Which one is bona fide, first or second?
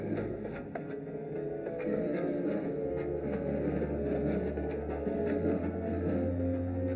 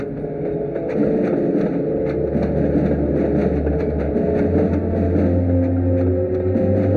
second